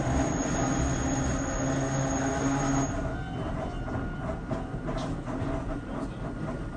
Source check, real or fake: real